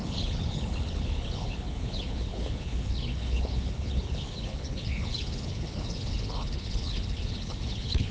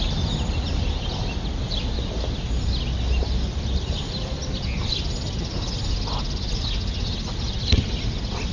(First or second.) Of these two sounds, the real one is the second